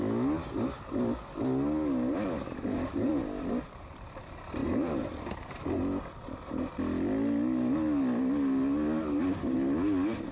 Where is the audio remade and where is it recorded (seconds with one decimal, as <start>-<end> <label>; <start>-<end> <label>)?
0.0-2.5 recorded; 2.5-3.1 remade; 3.1-4.6 recorded; 4.6-5.8 remade; 5.8-10.3 recorded